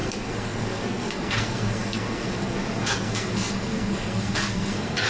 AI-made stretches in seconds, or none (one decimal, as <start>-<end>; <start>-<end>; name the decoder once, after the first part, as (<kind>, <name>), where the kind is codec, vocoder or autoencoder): 0.0-5.1 (codec, SNAC)